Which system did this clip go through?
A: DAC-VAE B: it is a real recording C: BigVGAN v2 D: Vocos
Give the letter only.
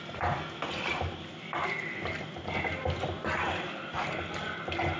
B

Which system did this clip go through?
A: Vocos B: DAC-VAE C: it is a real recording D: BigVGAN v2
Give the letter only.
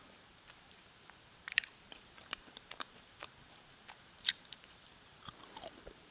D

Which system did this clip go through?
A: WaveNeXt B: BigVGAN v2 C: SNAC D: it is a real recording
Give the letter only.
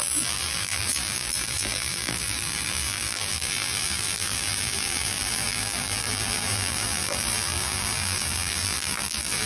B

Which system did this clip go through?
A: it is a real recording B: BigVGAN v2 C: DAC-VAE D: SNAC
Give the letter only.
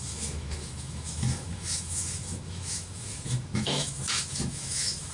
C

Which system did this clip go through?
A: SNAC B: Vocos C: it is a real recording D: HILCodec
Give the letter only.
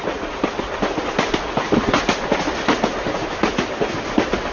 C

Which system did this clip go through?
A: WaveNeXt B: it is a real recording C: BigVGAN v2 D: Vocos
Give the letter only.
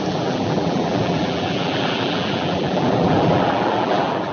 C